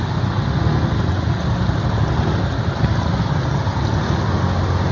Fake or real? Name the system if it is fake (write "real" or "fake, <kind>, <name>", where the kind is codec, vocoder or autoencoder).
real